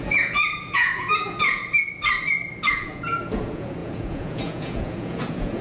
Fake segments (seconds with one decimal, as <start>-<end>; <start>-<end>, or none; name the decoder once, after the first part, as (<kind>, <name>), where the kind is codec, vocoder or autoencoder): 0.0-1.6 (vocoder, Vocos); 2.7-5.6